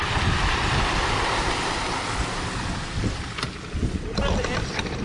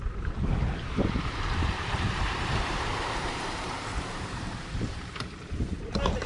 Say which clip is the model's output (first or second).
second